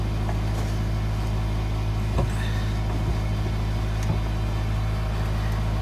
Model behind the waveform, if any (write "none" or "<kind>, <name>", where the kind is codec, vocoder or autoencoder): none